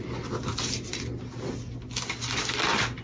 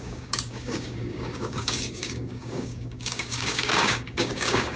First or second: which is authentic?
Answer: first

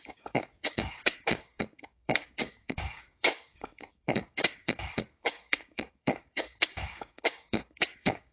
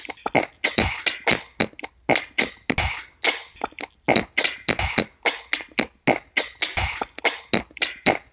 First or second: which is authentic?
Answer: second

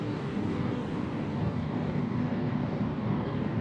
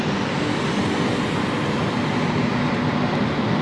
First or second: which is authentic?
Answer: second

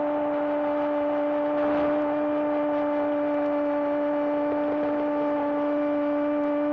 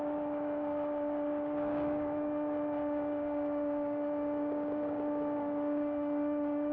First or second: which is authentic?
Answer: first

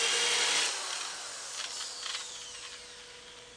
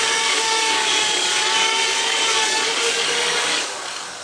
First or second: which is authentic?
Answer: first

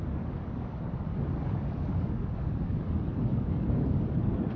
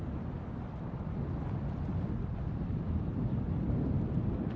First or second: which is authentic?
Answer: second